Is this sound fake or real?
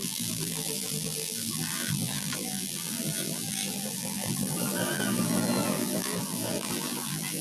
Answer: fake